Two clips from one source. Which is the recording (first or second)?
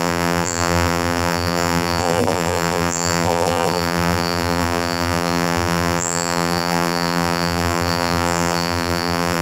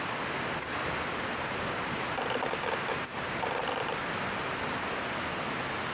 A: second